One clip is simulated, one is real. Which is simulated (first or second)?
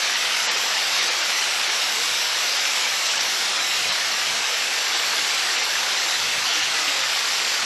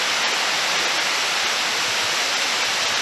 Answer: first